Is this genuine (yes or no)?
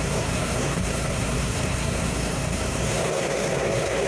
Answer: no